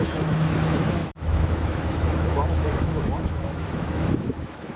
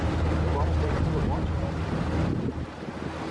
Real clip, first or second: second